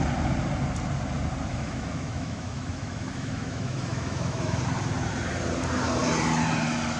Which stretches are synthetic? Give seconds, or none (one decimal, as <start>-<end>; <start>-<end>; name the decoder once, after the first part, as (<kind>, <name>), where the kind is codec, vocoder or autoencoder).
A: 1.5-4.6 (autoencoder, DAC-VAE)